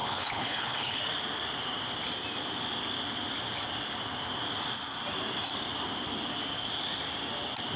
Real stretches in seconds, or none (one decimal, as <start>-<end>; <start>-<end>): 1.0-7.8